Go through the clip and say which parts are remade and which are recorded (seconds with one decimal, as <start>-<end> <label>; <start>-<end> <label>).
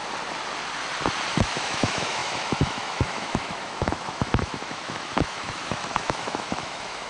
0.0-1.4 recorded; 1.4-7.1 remade